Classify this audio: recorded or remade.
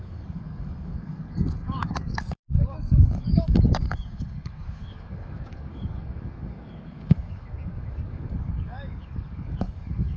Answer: remade